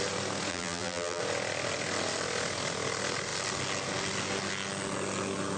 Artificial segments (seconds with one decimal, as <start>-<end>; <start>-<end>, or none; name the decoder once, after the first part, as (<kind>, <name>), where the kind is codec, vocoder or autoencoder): 0.5-1.2 (vocoder, BigVGAN v2)